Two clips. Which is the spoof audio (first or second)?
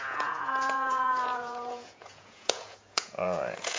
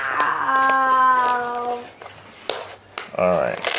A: first